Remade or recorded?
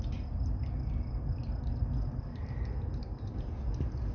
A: recorded